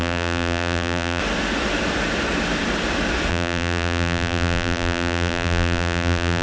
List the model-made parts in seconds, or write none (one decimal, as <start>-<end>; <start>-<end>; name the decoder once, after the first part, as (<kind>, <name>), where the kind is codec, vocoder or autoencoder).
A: 0.0-1.2 (vocoder, BigVGAN v2); 3.3-6.4